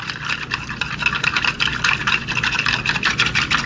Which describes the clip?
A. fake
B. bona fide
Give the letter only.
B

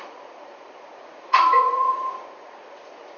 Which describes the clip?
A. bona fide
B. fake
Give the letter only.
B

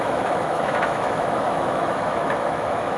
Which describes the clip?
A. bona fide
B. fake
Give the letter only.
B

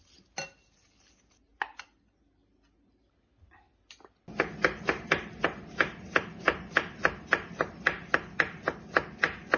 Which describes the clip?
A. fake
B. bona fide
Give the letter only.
B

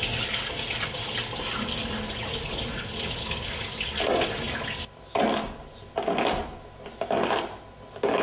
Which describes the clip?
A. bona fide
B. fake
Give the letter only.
A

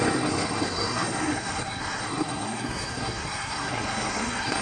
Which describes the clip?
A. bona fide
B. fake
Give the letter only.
B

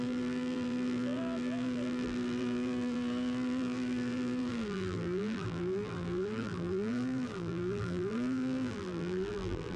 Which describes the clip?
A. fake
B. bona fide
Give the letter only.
A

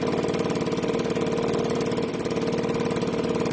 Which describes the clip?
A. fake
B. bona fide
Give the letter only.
B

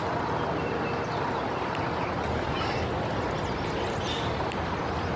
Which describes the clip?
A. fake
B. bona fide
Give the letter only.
B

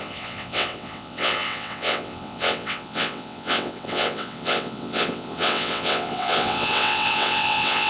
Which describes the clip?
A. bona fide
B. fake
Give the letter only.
B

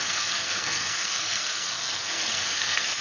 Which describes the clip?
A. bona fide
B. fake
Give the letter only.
B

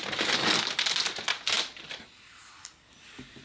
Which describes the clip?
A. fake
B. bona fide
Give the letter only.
B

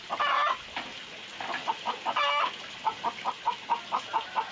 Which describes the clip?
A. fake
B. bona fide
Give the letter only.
B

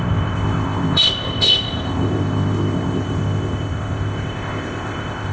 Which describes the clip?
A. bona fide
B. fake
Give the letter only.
B